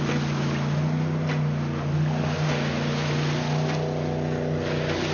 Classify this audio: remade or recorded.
recorded